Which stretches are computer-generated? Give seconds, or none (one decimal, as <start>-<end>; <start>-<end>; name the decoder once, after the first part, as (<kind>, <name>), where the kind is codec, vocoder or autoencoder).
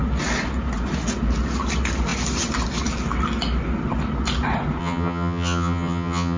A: 4.8-6.4 (vocoder, HiFi-GAN)